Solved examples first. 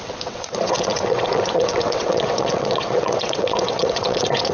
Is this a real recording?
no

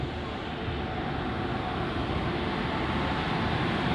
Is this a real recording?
yes